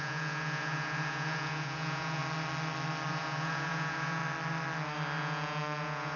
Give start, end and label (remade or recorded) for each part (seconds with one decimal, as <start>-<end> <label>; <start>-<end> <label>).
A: 0.0-2.2 remade; 2.2-3.1 recorded; 3.1-4.2 remade; 4.2-5.2 recorded; 5.2-6.2 remade